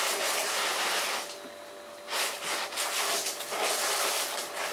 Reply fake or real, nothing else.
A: real